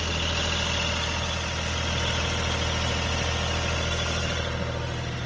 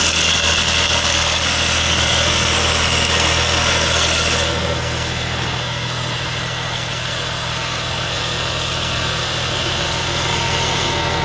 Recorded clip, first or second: first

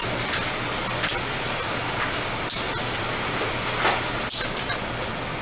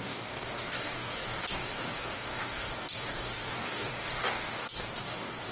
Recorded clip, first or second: first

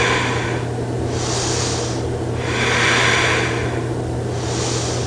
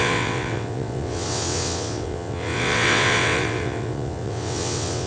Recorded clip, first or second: first